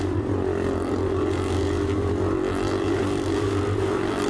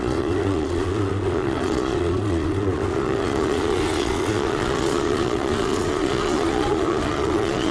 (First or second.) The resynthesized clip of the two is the second